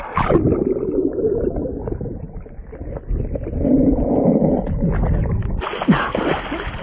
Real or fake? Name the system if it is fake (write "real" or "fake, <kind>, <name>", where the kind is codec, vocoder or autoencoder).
real